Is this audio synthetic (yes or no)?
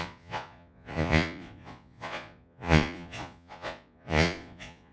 yes